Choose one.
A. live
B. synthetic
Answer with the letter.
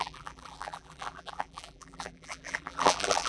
B